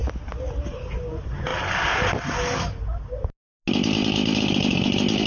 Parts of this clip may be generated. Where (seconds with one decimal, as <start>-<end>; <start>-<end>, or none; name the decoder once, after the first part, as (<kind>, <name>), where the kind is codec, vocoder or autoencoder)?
none